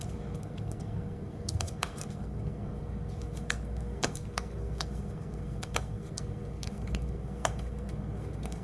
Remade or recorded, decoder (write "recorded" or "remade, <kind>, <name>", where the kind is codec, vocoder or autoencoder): remade, codec, SNAC